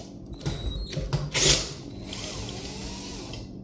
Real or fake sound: real